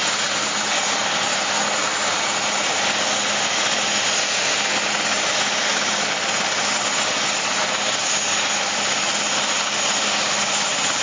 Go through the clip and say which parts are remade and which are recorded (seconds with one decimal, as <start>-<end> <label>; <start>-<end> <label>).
0.0-11.0 recorded